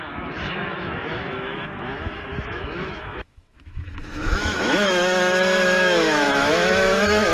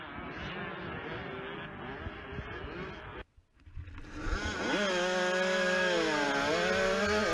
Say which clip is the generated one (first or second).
first